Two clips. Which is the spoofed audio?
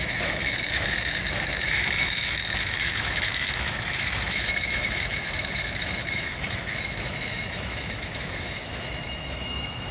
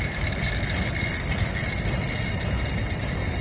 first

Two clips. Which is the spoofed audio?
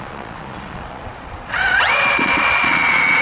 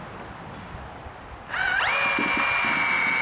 first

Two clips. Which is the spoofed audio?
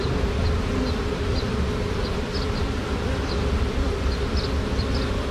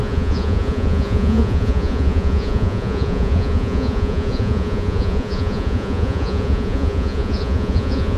second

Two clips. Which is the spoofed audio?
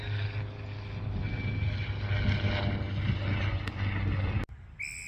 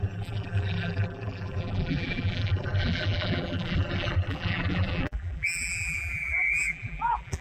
second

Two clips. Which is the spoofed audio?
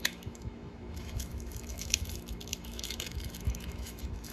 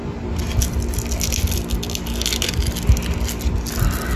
first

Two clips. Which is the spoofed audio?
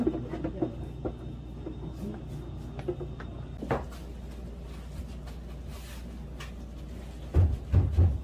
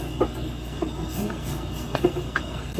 second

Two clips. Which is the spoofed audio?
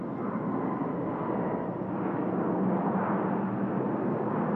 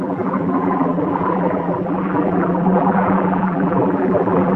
second